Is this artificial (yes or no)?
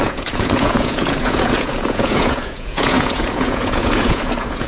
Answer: yes